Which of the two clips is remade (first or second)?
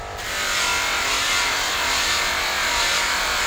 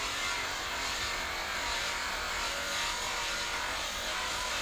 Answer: first